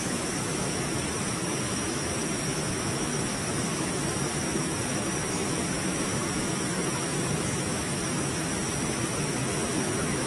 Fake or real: fake